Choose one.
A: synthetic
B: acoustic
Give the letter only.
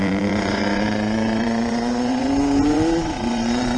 A